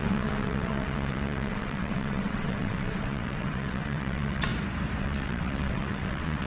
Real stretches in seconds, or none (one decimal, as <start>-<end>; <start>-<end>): 4.5-5.0